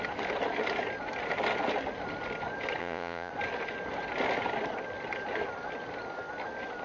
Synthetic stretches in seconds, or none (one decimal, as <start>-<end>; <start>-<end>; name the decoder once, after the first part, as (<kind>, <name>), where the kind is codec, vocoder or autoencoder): 2.8-3.3 (vocoder, Vocos)